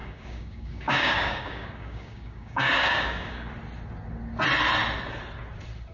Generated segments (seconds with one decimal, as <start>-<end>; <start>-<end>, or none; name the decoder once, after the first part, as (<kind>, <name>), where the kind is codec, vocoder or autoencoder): 0.0-3.5 (codec, DAC)

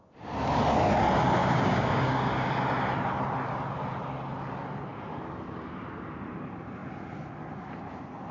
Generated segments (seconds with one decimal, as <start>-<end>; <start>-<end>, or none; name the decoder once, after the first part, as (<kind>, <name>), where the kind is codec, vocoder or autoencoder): 1.4-2.5 (codec, DAC)

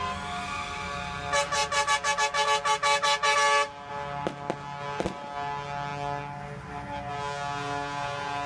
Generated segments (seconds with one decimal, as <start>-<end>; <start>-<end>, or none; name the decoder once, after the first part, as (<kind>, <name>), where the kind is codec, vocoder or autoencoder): none

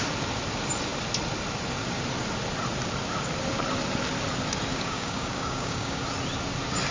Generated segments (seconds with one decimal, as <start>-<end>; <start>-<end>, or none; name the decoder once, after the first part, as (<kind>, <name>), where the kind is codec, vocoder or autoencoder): 4.7-6.0 (codec, DAC)